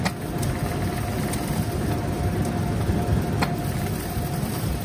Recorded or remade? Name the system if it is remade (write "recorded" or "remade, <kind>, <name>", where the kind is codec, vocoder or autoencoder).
recorded